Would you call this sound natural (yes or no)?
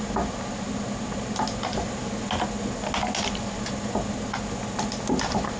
yes